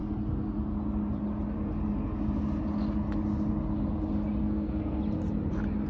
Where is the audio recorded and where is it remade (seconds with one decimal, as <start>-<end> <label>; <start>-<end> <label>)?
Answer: 0.0-4.4 recorded; 4.4-5.0 remade; 5.0-5.9 recorded